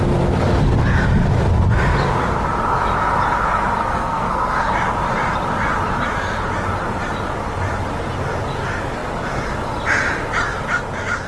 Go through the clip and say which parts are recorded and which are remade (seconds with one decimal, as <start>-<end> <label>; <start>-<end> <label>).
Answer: 0.0-3.8 recorded; 3.8-4.7 remade; 4.7-11.3 recorded